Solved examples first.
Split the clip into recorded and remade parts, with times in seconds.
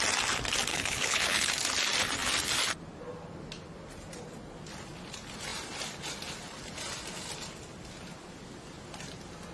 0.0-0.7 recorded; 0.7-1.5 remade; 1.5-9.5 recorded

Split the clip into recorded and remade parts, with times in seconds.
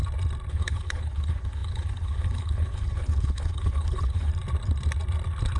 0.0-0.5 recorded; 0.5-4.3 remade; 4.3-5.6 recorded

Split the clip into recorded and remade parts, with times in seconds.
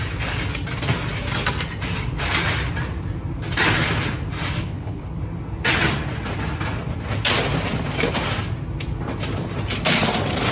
0.0-4.6 recorded; 4.6-5.2 remade; 5.2-10.5 recorded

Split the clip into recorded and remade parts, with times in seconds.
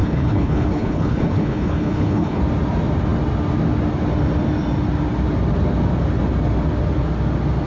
0.0-2.4 remade; 2.4-7.7 recorded